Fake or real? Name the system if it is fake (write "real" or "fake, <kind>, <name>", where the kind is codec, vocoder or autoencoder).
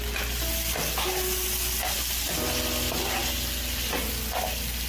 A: real